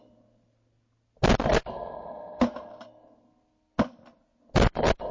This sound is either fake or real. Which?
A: real